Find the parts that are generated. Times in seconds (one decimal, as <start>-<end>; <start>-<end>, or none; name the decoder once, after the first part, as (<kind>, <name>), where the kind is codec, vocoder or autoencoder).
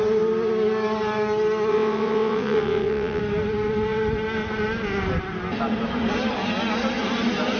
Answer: 1.7-3.2 (vocoder, WaveNeXt)